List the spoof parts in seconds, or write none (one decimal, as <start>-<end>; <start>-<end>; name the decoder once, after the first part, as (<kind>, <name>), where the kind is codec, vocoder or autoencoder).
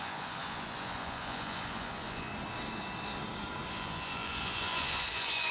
0.0-2.3 (vocoder, Vocos); 3.7-5.5